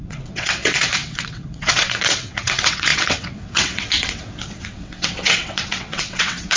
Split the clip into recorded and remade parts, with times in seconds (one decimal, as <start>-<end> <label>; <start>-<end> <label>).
0.0-6.6 remade